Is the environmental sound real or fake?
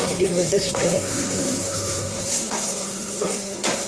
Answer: fake